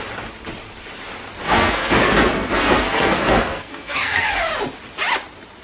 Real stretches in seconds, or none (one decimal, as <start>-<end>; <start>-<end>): 0.0-1.4; 4.3-5.6